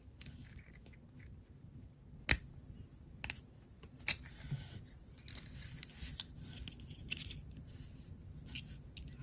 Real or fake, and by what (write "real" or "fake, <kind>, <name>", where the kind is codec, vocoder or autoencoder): real